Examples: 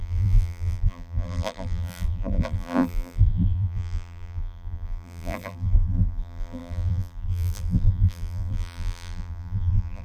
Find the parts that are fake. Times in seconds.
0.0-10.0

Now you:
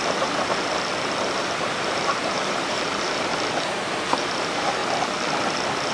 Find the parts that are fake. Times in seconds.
0.0-0.7; 1.2-3.3; 4.1-4.8

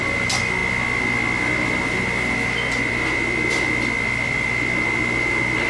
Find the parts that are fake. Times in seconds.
none

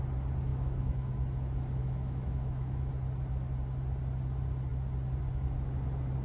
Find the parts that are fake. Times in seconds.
0.5-1.1; 1.8-2.9